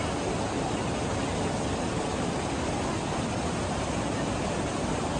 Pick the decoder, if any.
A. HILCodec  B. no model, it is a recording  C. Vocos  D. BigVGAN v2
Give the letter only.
B